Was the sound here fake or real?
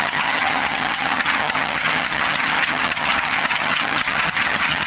fake